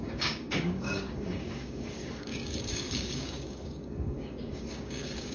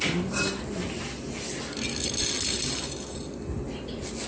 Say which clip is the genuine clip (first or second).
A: second